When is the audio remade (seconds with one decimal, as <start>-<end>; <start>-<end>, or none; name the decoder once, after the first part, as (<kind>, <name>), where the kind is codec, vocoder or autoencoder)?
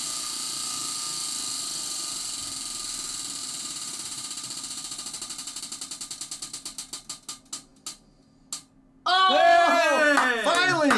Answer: 3.4-5.6 (vocoder, BigVGAN v2)